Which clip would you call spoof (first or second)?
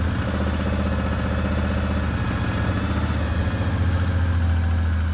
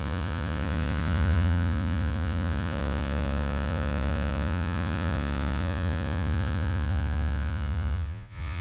second